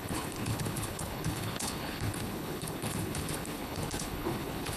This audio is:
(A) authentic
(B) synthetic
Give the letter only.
B